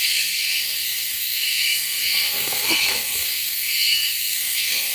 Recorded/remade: remade